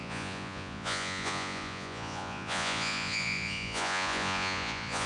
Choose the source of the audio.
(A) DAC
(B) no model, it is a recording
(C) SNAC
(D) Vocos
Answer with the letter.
D